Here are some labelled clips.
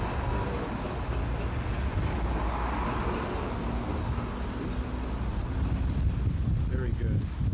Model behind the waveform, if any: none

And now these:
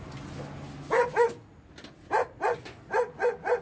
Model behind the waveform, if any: none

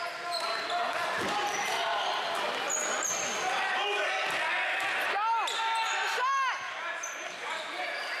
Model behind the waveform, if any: none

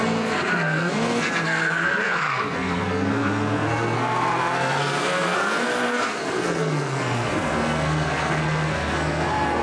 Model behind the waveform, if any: codec, SNAC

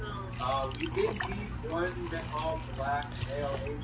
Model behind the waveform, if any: none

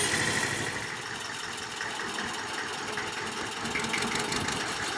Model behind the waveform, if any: none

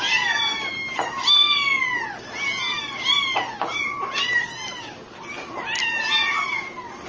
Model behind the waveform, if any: none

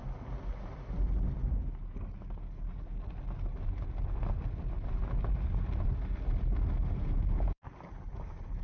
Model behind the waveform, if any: none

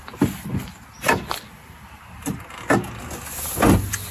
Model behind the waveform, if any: none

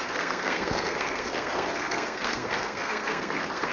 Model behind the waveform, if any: codec, SNAC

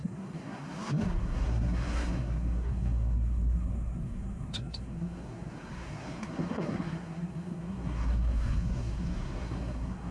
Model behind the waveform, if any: codec, SNAC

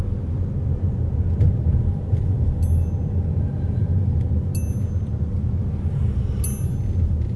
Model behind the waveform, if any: none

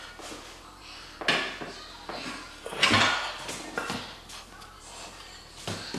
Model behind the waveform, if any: none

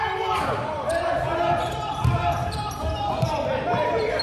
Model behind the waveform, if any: none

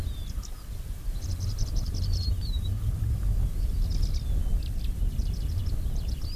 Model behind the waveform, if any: none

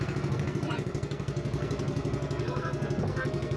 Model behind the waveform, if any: codec, SNAC